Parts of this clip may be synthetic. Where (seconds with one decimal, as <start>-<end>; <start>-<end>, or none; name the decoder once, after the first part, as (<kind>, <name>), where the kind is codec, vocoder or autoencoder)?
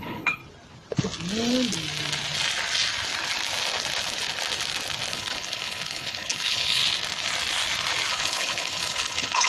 0.0-0.4 (codec, HILCodec); 5.1-6.8; 8.1-9.5